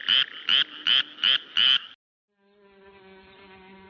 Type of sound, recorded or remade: recorded